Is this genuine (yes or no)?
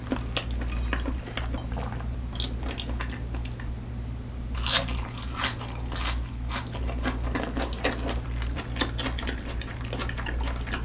yes